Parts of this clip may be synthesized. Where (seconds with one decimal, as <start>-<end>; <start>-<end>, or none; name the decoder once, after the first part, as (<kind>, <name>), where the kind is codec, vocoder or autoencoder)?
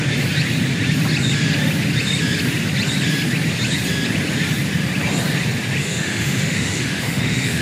5.8-7.6 (autoencoder, DAC-VAE)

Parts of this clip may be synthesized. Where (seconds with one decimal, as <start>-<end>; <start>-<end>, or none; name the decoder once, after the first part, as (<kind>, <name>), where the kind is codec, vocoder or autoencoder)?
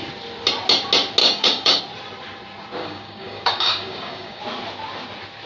1.2-1.8 (codec, DAC); 2.8-4.4